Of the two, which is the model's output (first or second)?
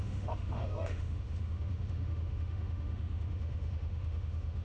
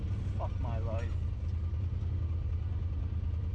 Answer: first